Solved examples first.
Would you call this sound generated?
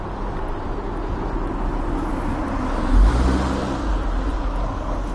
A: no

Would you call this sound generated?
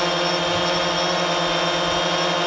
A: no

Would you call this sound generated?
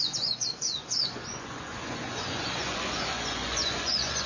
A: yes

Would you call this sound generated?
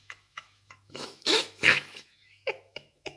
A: yes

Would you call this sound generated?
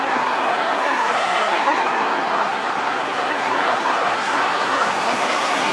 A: yes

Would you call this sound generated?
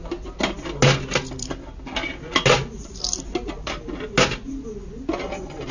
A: no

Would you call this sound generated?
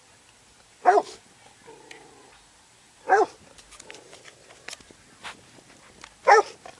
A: no